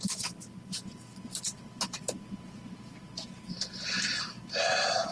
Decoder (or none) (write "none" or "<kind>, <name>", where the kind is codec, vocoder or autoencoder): none